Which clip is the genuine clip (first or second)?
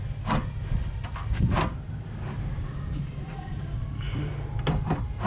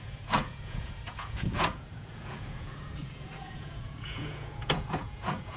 first